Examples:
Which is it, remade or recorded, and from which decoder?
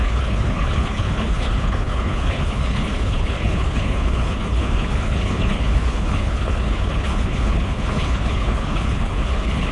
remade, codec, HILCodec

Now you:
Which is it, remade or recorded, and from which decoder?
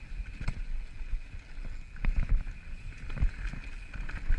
recorded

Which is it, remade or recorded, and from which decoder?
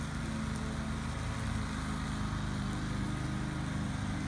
recorded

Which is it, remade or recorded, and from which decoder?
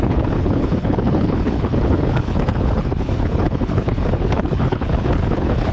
remade, codec, HILCodec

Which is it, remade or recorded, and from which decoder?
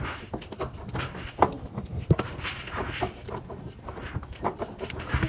recorded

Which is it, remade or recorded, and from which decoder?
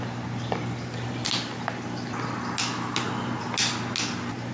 recorded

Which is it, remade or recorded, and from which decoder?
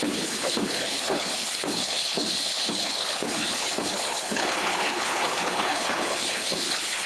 remade, codec, HILCodec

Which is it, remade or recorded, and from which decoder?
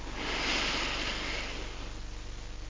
recorded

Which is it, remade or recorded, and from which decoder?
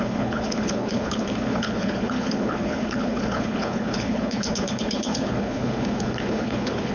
remade, codec, HILCodec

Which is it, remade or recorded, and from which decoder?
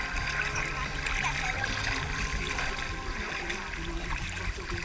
recorded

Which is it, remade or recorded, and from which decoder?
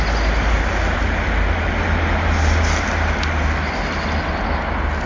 recorded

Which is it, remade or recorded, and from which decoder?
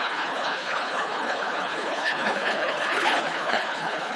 remade, codec, HILCodec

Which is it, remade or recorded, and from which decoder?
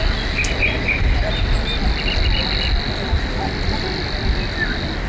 recorded